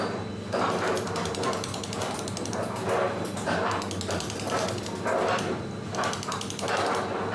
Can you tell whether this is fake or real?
real